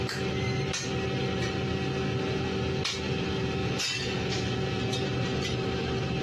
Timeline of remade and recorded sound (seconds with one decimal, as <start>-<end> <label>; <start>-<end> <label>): 0.0-3.6 recorded; 3.6-4.8 remade; 4.8-6.2 recorded